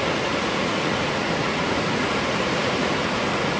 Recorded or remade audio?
remade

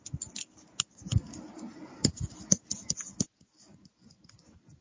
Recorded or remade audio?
recorded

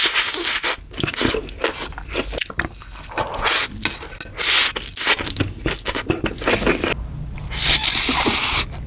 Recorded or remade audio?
recorded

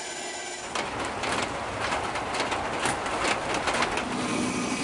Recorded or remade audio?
recorded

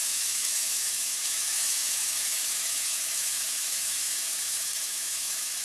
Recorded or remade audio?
remade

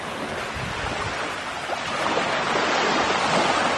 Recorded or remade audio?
recorded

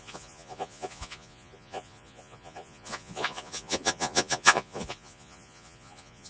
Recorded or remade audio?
remade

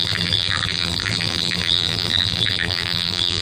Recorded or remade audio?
remade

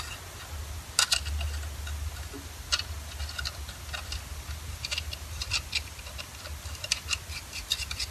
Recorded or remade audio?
recorded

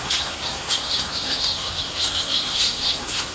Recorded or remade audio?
remade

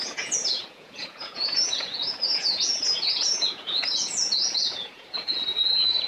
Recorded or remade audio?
remade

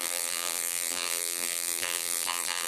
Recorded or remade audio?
remade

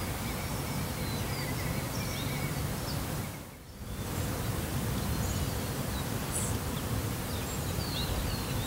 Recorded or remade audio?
recorded